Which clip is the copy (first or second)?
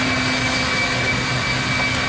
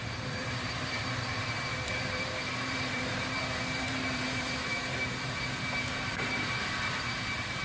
second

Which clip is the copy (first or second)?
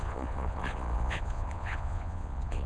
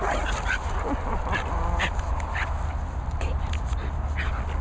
first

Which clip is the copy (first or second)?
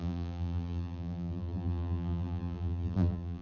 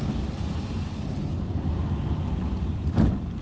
first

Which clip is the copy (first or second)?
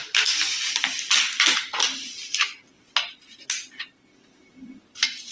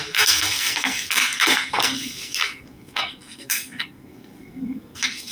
second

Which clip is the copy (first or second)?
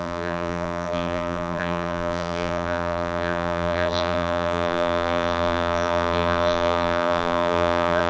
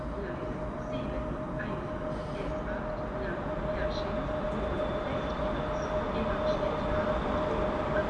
first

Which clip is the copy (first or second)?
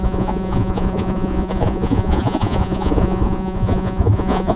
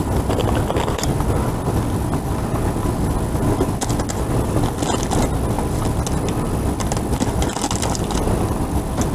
first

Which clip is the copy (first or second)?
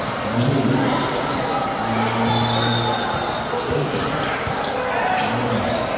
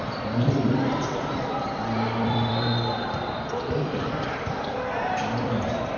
second